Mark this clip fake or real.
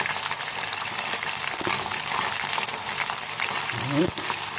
fake